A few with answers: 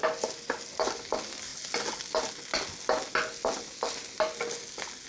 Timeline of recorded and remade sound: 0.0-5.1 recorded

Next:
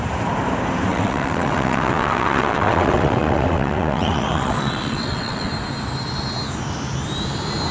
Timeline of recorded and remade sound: 0.0-0.9 recorded; 0.9-5.5 remade; 5.5-7.7 recorded

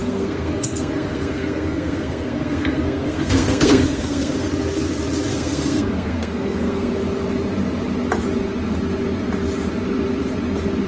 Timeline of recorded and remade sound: 0.0-4.5 remade; 4.5-5.3 recorded; 5.3-6.9 remade; 6.9-10.9 recorded

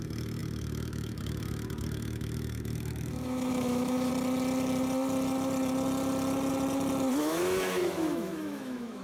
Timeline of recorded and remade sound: 0.0-4.1 remade; 4.1-7.2 recorded; 7.2-9.0 remade

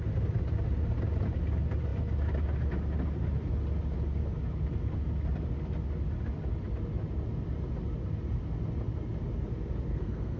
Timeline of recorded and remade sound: 0.0-9.9 recorded; 9.9-10.4 remade

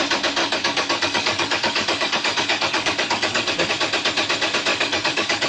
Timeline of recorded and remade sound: 0.0-0.4 recorded; 0.4-3.7 remade; 3.7-4.7 recorded; 4.7-5.5 remade

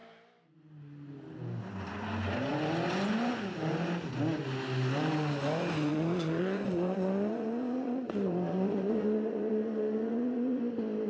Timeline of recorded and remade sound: 0.0-5.9 recorded; 5.9-10.6 remade; 10.6-11.1 recorded